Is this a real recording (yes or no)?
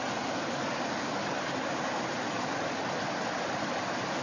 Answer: yes